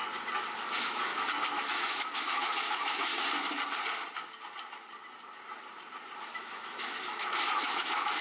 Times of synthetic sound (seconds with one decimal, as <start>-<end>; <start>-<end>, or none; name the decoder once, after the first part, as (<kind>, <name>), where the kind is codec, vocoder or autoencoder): 0.6-1.1 (autoencoder, DAC-VAE); 1.6-3.1; 6.2-8.2